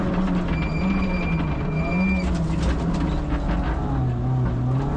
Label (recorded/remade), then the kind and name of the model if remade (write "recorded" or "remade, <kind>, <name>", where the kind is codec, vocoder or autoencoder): recorded